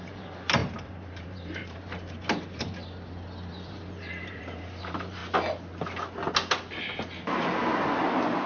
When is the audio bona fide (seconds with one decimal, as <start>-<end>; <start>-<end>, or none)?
2.8-3.5; 5.2-8.5